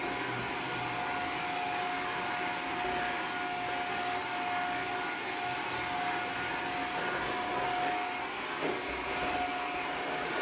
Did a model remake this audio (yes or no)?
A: no